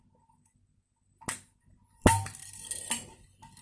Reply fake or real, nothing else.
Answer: real